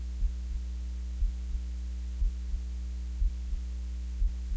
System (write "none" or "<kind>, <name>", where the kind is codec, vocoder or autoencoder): none